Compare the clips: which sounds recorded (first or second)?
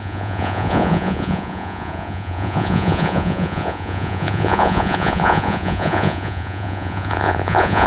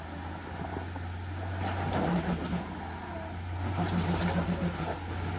second